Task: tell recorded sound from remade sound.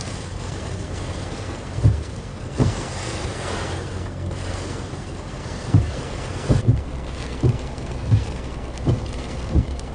remade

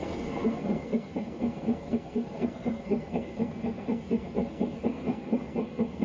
remade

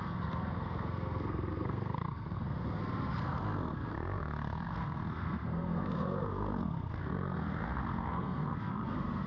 remade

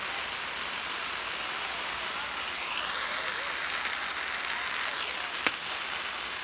recorded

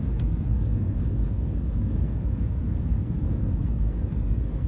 remade